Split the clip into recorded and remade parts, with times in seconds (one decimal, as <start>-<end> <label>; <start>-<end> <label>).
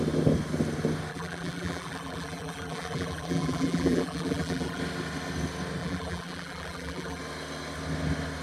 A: 0.0-1.1 recorded; 1.1-4.8 remade; 4.8-5.8 recorded; 5.8-7.2 remade; 7.2-8.4 recorded